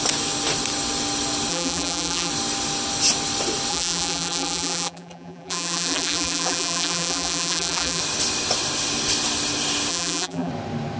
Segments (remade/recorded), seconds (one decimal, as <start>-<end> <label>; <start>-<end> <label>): 0.0-1.5 recorded; 1.5-2.3 remade; 2.3-3.7 recorded; 3.7-8.0 remade; 8.0-9.9 recorded; 9.9-10.5 remade; 10.5-11.0 recorded